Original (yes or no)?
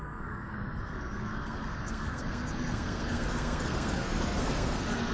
no